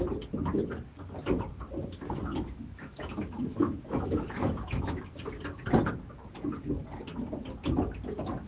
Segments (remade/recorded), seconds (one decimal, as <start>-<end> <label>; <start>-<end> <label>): 0.0-2.3 recorded; 2.3-5.0 remade; 5.0-8.5 recorded